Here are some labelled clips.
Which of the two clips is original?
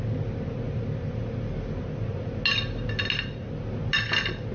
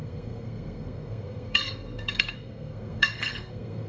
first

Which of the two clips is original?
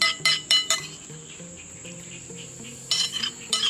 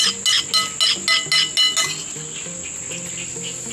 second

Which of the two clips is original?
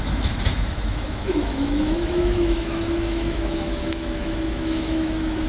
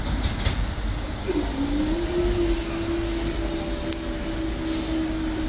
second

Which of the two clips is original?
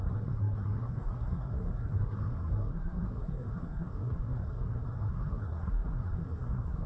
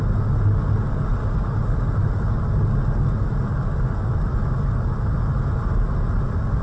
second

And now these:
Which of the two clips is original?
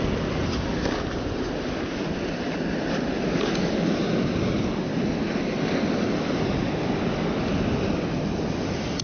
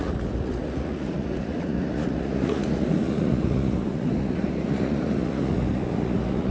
first